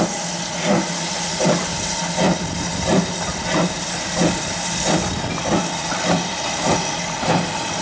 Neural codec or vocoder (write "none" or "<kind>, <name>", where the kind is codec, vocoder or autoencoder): none